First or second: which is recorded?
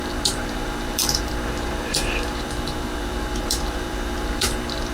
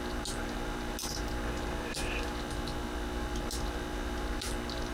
second